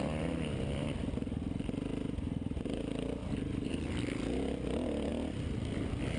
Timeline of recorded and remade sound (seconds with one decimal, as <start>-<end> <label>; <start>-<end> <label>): 0.0-1.9 recorded; 1.9-2.8 remade; 2.8-3.2 recorded; 3.2-3.9 remade; 3.9-6.2 recorded